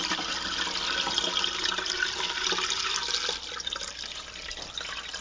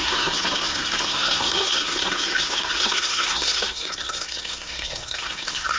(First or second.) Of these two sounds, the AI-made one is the second